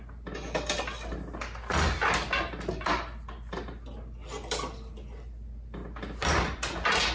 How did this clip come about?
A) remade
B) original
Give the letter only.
B